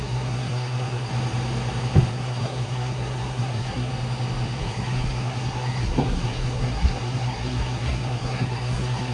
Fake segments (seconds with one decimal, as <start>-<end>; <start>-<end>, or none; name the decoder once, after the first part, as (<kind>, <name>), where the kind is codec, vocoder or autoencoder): 0.0-1.1 (codec, SNAC); 2.1-3.9; 4.6-9.1

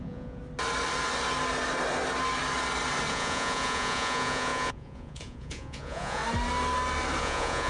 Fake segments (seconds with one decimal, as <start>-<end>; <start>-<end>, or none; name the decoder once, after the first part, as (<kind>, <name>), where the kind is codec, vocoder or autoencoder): 0.0-0.4 (vocoder, Vocos); 3.1-6.2; 7.2-7.7

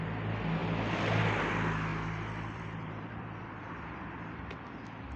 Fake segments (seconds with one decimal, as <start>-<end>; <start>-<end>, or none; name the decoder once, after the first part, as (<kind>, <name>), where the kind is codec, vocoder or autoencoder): 0.6-1.2 (vocoder, BigVGAN v2); 1.9-5.2

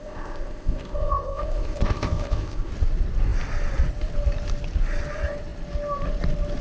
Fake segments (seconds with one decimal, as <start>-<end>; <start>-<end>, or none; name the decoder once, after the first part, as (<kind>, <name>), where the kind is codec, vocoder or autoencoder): 0.0-2.7 (codec, ZipCodec)

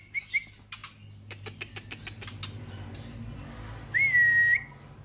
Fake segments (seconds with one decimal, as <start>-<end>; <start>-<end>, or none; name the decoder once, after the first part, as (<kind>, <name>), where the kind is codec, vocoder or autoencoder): none